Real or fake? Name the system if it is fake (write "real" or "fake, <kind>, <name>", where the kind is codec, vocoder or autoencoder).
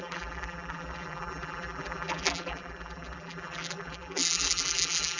fake, vocoder, BigVGAN v2